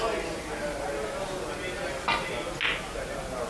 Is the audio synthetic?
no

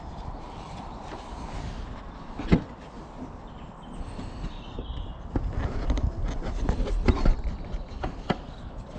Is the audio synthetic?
no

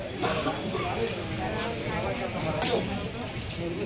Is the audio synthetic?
no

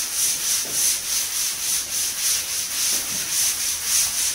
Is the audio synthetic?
no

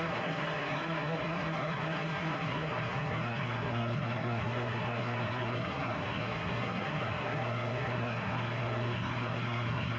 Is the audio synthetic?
yes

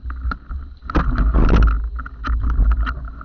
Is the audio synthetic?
no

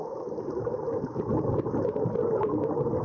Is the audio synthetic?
no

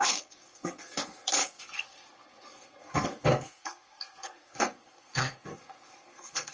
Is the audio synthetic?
yes